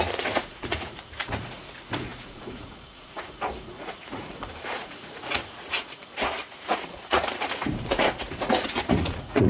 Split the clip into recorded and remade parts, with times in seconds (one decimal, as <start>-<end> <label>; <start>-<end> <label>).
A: 0.0-9.5 remade